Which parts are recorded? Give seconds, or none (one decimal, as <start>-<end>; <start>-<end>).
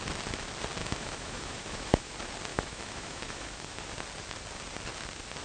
0.0-0.8; 2.1-2.5; 3.8-5.4